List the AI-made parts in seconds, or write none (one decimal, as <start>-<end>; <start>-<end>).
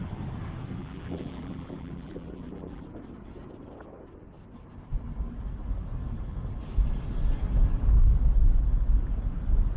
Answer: 0.8-2.8